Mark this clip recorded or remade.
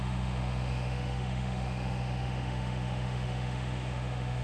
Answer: remade